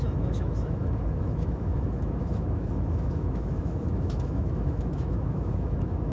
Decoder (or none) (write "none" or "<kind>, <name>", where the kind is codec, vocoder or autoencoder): autoencoder, DAC-VAE